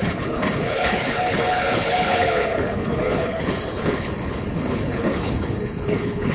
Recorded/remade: remade